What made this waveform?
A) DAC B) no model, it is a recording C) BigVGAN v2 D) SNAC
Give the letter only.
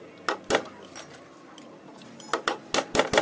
B